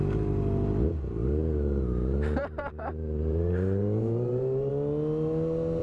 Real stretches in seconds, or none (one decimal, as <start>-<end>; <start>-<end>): 0.0-1.2; 4.7-5.8